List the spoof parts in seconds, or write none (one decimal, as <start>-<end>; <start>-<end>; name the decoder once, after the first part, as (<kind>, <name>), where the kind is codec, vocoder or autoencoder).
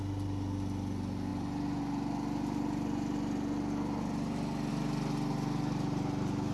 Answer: none